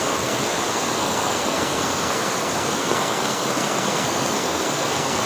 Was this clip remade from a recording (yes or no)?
yes